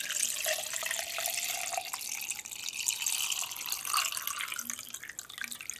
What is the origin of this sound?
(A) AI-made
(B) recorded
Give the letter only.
B